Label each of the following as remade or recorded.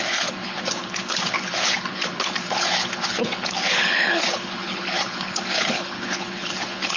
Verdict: remade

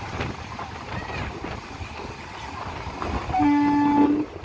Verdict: recorded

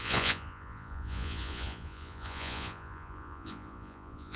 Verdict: remade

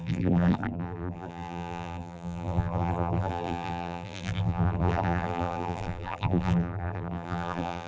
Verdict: remade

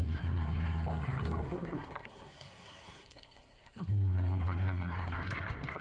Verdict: remade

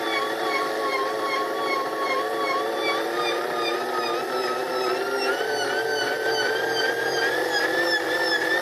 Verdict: remade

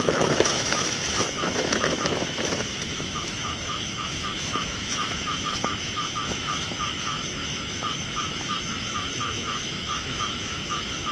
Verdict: remade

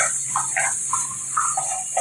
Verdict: recorded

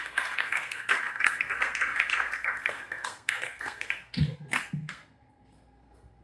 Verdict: remade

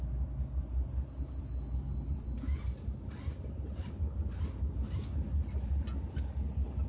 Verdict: recorded